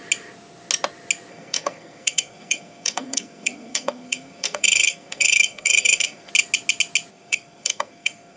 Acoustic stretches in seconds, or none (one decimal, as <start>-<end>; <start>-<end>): 0.0-1.3; 6.3-7.1